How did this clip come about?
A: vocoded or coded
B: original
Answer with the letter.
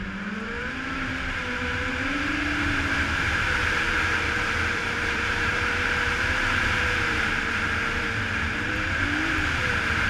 A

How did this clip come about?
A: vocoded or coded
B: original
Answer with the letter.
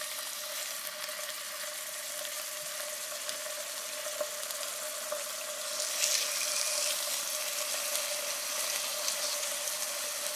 B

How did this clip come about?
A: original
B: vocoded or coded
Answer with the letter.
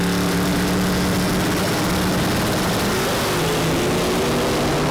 A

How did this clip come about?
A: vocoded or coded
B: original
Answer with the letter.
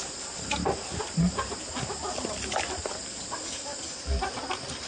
B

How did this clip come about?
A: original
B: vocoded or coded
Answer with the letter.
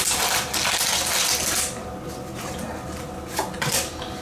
A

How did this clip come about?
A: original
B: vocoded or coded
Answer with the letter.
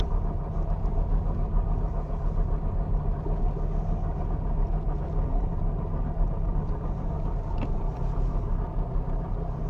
A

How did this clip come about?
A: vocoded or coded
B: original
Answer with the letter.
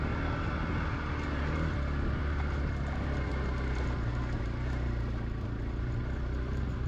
B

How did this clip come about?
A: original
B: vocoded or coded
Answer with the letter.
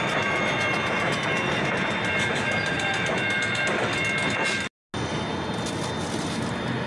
A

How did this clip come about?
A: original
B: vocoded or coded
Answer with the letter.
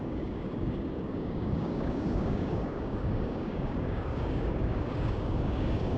B